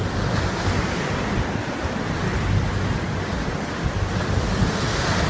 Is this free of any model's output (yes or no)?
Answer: no